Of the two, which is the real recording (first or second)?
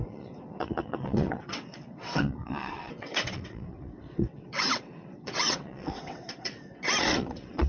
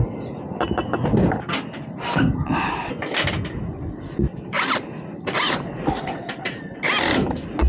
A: second